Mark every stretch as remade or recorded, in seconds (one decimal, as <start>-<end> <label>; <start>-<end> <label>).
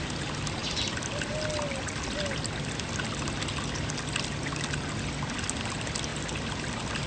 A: 0.0-7.1 recorded